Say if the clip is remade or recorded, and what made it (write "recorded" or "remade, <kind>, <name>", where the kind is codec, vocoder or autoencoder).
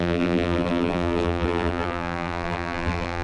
remade, vocoder, BigVGAN v2